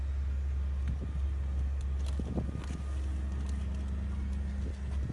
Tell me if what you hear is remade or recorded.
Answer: recorded